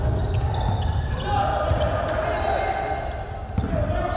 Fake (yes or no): no